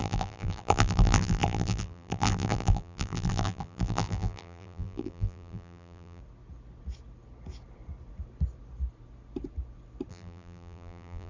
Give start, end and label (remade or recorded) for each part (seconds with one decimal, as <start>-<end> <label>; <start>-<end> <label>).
0.0-6.2 remade; 6.2-10.1 recorded; 10.1-11.3 remade